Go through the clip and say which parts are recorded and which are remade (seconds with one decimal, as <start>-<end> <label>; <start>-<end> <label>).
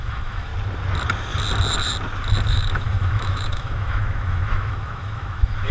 0.0-0.5 remade; 0.5-2.5 recorded; 2.5-5.7 remade